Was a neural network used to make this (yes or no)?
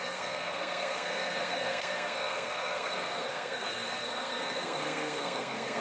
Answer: yes